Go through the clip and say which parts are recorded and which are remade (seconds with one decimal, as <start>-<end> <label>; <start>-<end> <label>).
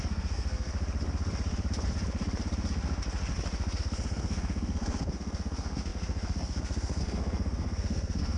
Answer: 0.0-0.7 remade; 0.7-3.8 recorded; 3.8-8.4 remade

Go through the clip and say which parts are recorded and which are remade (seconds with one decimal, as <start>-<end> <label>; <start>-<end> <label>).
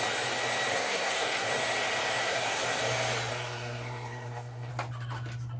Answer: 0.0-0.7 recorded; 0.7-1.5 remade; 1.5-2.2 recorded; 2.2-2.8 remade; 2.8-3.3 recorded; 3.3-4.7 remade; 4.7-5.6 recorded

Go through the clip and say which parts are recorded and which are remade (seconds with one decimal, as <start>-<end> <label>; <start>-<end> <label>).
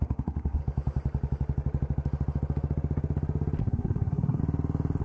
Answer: 0.0-0.6 remade; 0.6-3.6 recorded; 3.6-4.4 remade; 4.4-5.0 recorded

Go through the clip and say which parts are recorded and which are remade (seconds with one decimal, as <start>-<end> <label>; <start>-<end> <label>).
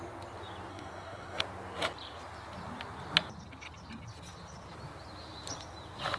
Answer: 0.0-0.7 recorded; 0.7-1.4 remade; 1.4-6.2 recorded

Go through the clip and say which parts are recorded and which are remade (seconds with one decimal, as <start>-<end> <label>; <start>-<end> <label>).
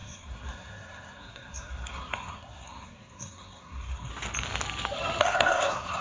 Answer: 0.0-4.1 remade; 4.1-5.2 recorded; 5.2-6.0 remade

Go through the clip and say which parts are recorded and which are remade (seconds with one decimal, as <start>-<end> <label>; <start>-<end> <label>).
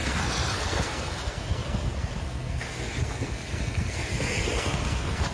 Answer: 0.0-5.3 remade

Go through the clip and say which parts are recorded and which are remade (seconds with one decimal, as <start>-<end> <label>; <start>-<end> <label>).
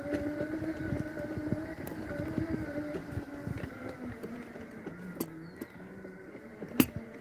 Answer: 0.0-7.2 recorded